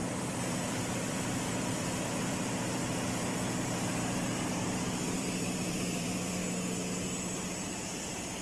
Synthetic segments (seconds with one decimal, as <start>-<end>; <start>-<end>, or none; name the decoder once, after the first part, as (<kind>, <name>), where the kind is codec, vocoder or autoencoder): 0.0-2.8 (vocoder, BigVGAN v2); 4.6-6.4